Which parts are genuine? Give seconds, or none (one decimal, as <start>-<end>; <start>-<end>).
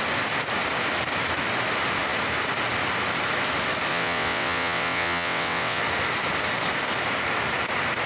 0.0-3.9; 5.8-8.1